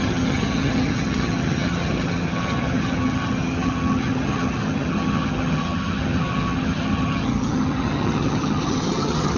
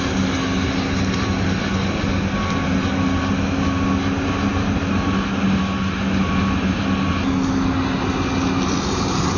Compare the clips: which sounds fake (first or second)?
first